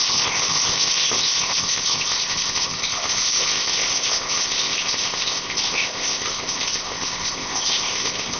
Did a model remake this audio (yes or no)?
yes